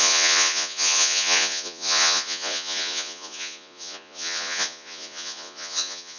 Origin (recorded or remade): remade